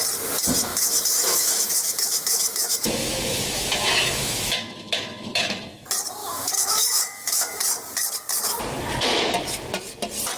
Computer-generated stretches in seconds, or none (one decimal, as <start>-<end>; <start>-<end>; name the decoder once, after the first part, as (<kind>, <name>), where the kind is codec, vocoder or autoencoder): 0.7-5.6 (autoencoder, DAC-VAE); 6.2-7.6